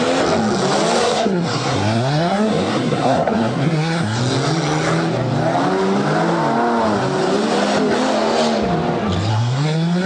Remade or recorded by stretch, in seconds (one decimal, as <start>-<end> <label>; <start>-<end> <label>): 0.0-1.0 recorded; 1.0-4.2 remade; 4.2-9.3 recorded; 9.3-10.1 remade